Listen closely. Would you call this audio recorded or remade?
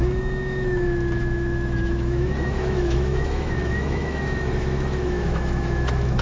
remade